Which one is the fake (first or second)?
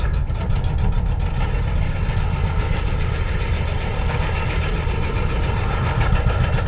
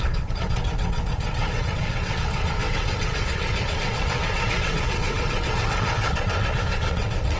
second